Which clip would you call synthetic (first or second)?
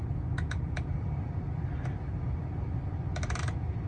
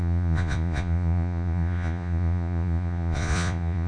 second